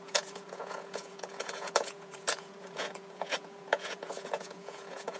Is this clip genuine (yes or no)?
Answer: no